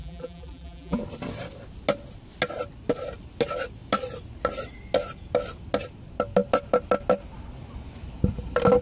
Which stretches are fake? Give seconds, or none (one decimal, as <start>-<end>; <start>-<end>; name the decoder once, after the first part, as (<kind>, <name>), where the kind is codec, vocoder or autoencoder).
0.0-1.0 (vocoder, BigVGAN v2)